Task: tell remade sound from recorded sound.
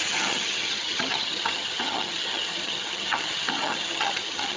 remade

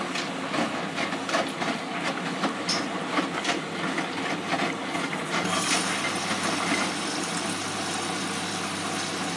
recorded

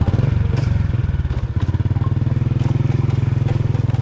recorded